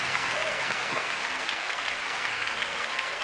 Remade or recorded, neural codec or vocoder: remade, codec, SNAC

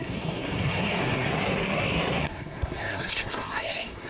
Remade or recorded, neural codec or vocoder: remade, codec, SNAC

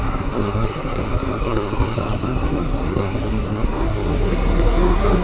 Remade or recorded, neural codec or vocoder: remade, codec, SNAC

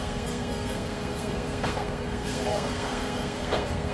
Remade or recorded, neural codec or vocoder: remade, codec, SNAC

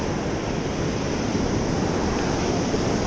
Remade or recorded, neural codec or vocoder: recorded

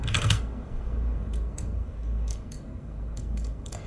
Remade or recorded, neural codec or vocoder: remade, codec, SNAC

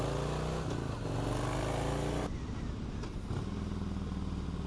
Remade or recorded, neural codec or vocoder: recorded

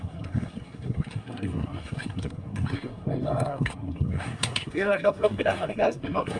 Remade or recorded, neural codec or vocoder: remade, codec, SNAC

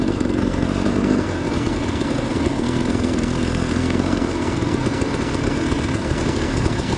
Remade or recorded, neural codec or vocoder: remade, codec, SNAC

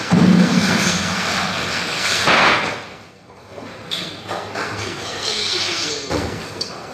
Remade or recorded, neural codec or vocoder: remade, codec, SNAC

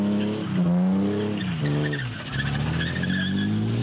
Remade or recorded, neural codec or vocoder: recorded